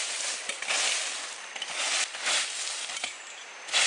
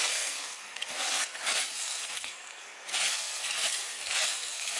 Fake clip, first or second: second